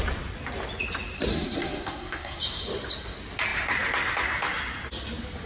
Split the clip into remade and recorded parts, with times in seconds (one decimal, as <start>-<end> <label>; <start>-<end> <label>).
0.0-1.3 recorded; 1.3-2.4 remade; 2.4-5.5 recorded